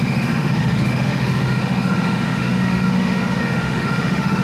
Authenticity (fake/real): fake